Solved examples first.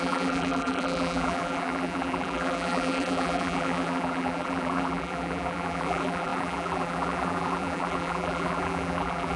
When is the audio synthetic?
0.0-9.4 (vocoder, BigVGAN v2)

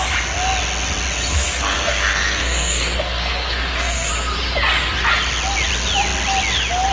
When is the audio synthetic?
1.3-4.1 (codec, SNAC)

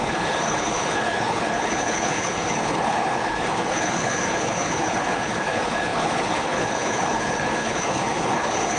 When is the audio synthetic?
0.0-8.8 (codec, HILCodec)

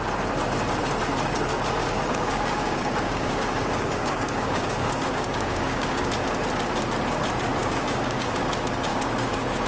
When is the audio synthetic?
1.8-6.1 (codec, DAC); 7.6-8.5; 8.9-9.7

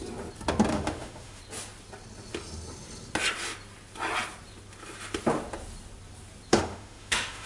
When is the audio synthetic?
0.7-1.4 (autoencoder, DAC-VAE); 6.5-7.5

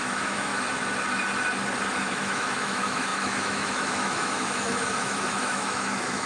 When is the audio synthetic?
0.0-0.5 (autoencoder, DAC-VAE); 2.0-6.3

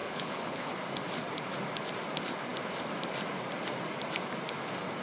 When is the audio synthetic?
0.0-0.7 (codec, HILCodec)

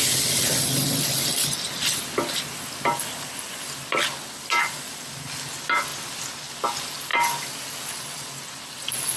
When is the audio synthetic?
none